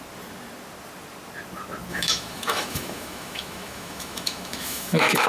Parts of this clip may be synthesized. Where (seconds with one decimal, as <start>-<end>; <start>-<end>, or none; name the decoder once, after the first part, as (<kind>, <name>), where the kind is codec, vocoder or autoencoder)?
1.9-5.3 (autoencoder, DAC-VAE)